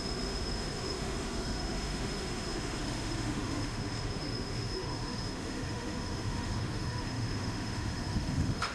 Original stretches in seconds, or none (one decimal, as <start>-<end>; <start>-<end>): none